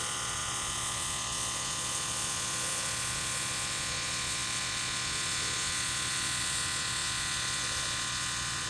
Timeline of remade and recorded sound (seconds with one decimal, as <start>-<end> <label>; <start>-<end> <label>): 0.0-8.7 remade